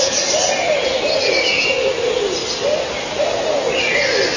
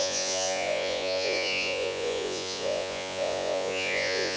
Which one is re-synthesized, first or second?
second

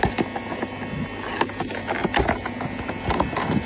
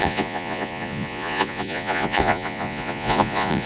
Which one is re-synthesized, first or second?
second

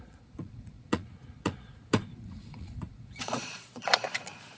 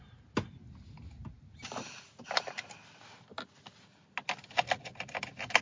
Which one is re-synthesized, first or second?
first